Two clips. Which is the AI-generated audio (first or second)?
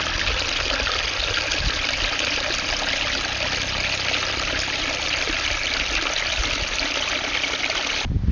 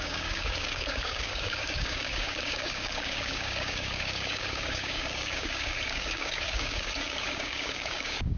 second